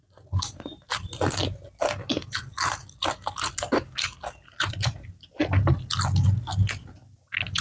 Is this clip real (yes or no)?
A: yes